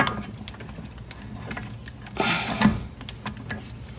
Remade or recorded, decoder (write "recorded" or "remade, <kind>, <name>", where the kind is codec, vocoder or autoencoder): recorded